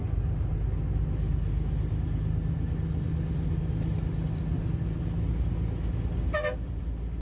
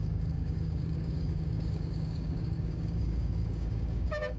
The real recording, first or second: first